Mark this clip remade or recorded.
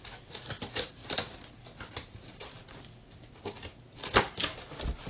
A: recorded